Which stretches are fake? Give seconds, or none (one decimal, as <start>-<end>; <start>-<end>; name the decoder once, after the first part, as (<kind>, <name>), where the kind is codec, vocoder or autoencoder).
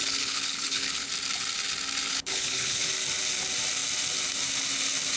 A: 0.0-1.1 (codec, HILCodec); 2.1-2.9